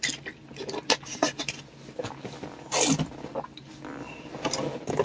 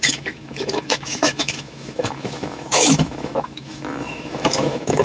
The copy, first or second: second